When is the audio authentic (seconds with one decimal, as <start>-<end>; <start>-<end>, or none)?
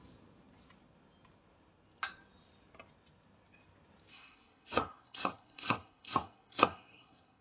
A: 0.0-4.1